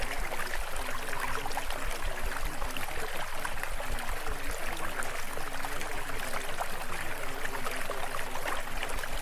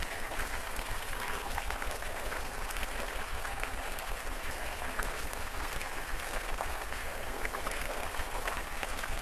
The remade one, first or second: second